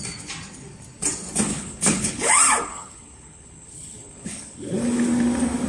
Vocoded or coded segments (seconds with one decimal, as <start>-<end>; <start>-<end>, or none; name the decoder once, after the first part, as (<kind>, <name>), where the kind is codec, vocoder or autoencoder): 1.5-2.3 (codec, HILCodec); 2.7-4.7